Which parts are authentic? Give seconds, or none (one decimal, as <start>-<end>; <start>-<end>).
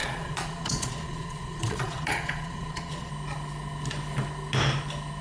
3.1-5.2